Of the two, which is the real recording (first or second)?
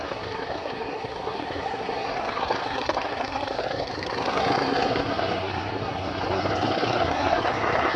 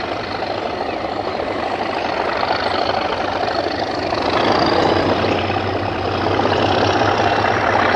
second